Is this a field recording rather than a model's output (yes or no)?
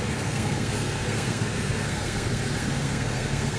no